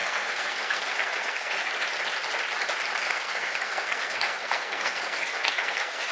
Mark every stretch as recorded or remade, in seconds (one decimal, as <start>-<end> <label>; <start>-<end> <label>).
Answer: 0.0-1.7 remade; 1.7-3.0 recorded; 3.0-6.1 remade